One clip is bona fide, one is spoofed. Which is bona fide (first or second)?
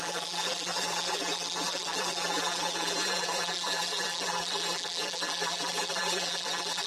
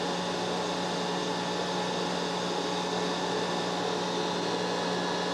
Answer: second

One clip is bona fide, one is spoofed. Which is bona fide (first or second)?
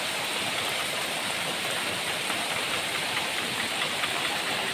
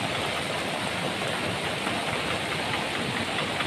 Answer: second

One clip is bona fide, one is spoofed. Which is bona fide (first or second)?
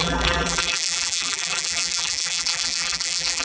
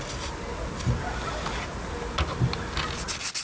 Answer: second